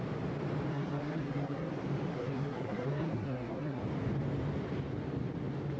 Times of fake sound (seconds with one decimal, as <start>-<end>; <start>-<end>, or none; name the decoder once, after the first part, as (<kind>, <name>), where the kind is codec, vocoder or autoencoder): 0.7-1.7 (codec, SNAC); 2.1-3.8